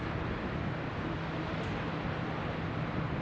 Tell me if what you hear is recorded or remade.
recorded